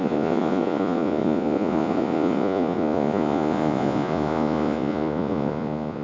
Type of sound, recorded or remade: remade